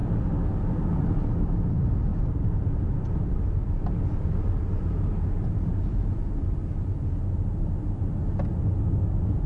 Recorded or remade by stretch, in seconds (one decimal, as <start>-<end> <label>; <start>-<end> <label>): 0.0-2.1 recorded; 2.1-4.5 remade; 4.5-9.5 recorded